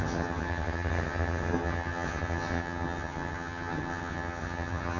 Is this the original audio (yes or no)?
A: no